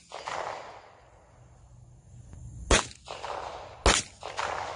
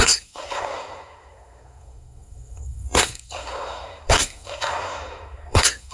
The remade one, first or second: second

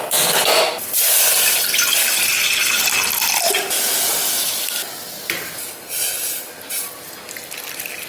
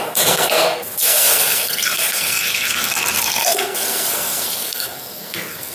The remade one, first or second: second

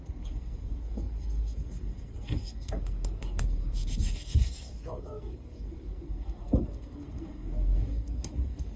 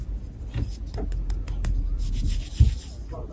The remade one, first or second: first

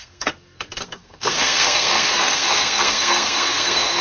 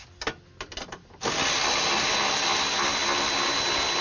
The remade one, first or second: first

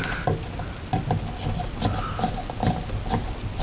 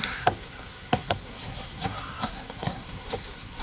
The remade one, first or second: second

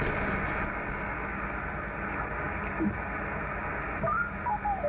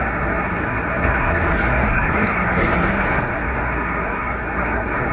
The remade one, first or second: second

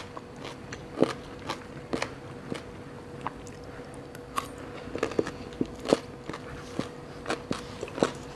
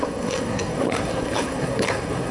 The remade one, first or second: second